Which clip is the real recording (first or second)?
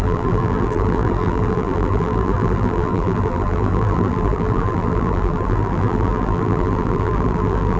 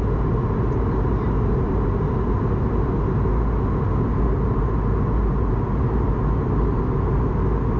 second